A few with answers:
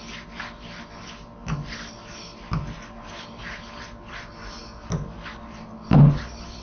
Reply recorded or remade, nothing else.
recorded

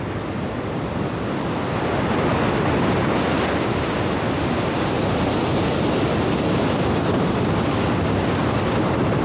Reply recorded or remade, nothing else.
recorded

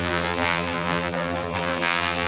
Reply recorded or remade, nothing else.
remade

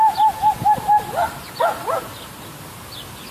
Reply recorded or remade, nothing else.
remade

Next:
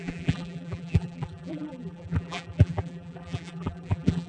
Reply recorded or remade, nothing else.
remade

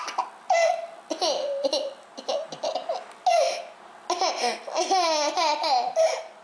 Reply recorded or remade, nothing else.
recorded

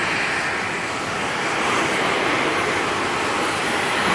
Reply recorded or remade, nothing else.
remade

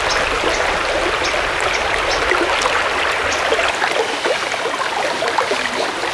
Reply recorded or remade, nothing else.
recorded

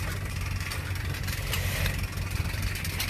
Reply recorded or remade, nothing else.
recorded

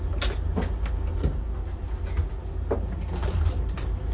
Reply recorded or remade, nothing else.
recorded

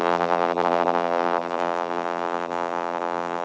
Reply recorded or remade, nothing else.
remade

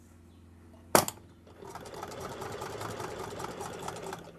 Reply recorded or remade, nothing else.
recorded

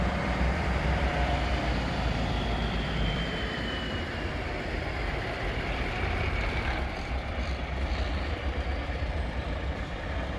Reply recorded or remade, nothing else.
remade